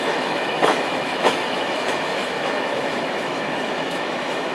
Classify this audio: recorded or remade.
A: remade